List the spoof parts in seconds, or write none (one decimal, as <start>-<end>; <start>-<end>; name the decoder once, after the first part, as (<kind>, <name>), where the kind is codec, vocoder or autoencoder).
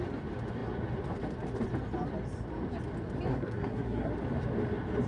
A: 3.3-4.1 (codec, SNAC)